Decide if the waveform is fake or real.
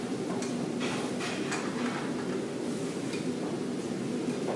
real